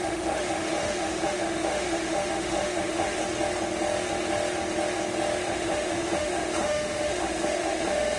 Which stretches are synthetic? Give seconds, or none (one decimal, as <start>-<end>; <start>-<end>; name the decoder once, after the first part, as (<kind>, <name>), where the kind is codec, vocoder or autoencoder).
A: 0.0-3.2 (autoencoder, DAC-VAE); 5.5-8.2

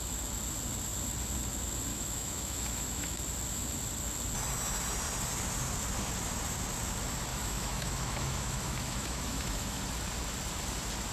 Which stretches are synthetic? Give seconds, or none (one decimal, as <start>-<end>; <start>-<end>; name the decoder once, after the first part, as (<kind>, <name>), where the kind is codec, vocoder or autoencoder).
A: 1.9-3.2 (autoencoder, DAC-VAE); 7.3-9.8

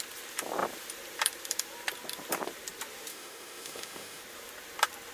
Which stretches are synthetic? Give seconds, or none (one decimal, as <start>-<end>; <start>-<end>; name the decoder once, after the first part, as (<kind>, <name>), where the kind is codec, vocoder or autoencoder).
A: 3.1-4.2 (autoencoder, DAC-VAE)